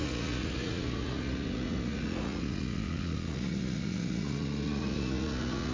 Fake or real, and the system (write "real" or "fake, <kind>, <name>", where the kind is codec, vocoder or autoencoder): fake, vocoder, Vocos